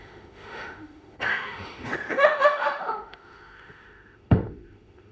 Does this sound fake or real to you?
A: fake